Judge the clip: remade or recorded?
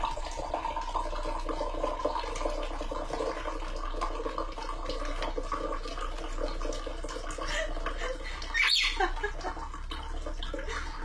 recorded